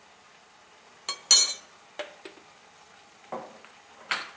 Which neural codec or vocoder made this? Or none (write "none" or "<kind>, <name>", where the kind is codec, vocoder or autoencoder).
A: none